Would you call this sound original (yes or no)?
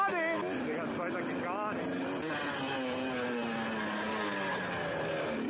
yes